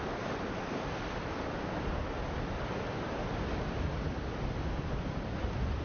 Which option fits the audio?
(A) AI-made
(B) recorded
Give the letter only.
A